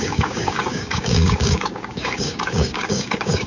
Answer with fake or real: fake